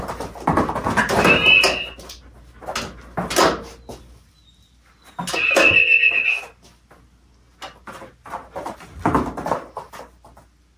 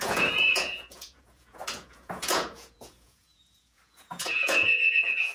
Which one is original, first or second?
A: first